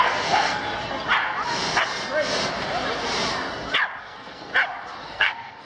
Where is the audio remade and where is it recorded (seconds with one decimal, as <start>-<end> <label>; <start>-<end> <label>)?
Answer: 0.0-0.6 remade; 0.6-4.0 recorded; 4.0-4.5 remade; 4.5-5.1 recorded; 5.1-5.7 remade